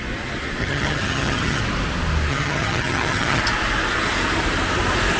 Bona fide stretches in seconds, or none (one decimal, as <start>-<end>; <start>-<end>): 0.0-0.6; 1.6-2.3; 3.4-5.2